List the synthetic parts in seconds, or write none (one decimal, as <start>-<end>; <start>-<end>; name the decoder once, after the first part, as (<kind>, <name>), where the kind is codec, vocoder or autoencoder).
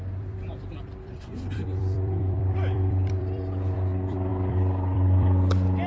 0.0-5.9 (vocoder, BigVGAN v2)